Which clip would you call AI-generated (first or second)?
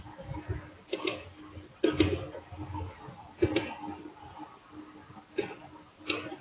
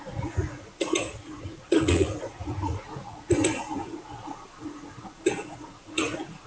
second